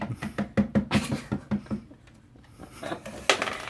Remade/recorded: recorded